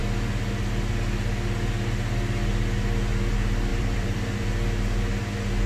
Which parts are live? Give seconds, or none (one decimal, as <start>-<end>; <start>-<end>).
0.0-3.7; 4.5-5.7